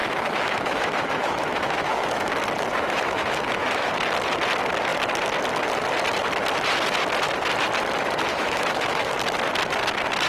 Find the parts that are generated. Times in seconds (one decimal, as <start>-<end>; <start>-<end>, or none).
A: 0.0-2.3; 2.7-3.9; 8.3-9.1